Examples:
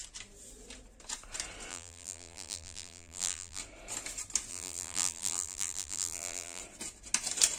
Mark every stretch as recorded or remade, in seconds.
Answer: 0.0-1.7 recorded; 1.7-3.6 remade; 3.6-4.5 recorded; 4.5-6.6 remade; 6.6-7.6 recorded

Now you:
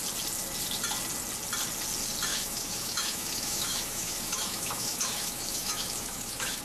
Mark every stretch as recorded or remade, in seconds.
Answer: 0.0-2.3 recorded; 2.3-6.6 remade

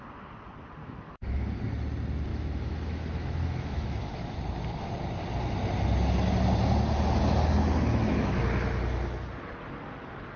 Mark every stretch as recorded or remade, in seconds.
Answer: 0.0-0.8 recorded; 0.8-1.6 remade; 1.6-2.3 recorded; 2.3-4.4 remade; 4.4-7.9 recorded; 7.9-8.4 remade; 8.4-10.4 recorded

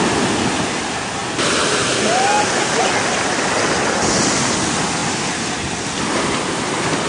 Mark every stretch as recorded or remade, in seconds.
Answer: 0.0-7.1 recorded

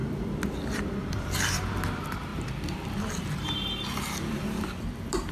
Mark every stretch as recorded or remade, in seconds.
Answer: 0.0-1.7 remade; 1.7-2.3 recorded; 2.3-5.3 remade

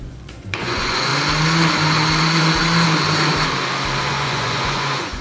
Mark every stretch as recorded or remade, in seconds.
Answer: 0.0-1.1 remade; 1.1-2.2 recorded; 2.2-2.6 remade; 2.6-4.0 recorded; 4.0-5.2 remade